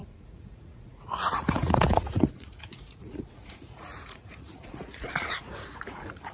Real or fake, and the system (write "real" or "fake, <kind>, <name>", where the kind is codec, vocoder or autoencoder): fake, vocoder, Vocos